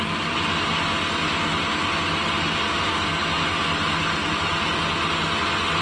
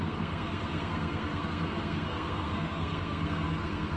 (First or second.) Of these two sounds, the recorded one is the first